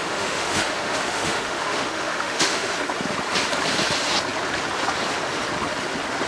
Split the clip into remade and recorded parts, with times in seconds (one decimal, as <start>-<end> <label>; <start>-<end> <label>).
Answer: 0.0-2.7 remade; 2.7-6.3 recorded